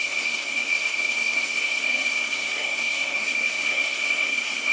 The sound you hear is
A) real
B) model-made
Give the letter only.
B